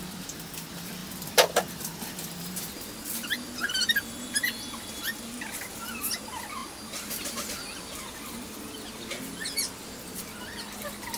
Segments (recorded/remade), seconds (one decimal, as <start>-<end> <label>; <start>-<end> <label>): 0.0-11.2 recorded